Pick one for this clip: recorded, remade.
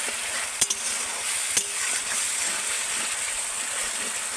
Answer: recorded